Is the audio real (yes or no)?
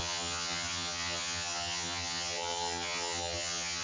no